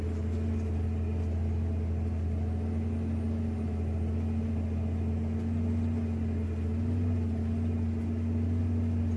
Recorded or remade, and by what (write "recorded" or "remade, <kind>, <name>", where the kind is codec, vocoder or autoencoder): recorded